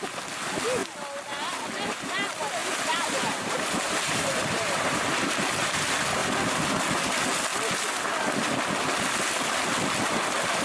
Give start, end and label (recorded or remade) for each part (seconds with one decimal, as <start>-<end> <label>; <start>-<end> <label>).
0.0-2.6 recorded; 2.6-5.0 remade; 5.0-10.6 recorded